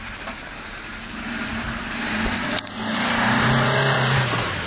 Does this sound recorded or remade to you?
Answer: remade